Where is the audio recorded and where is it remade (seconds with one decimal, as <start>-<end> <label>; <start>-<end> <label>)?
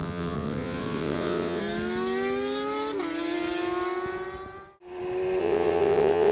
0.0-1.6 remade; 1.6-5.4 recorded; 5.4-6.3 remade